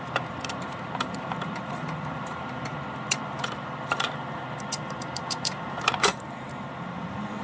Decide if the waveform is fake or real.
fake